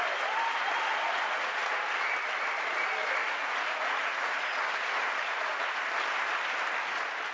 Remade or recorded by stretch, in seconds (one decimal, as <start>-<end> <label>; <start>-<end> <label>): 0.0-0.9 recorded; 0.9-1.8 remade; 1.8-3.2 recorded; 3.2-5.6 remade; 5.6-7.3 recorded